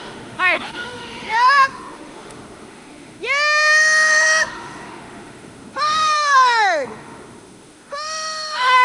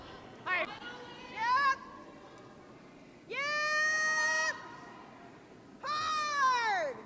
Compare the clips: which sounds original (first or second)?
second